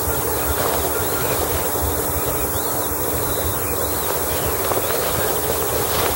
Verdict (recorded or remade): recorded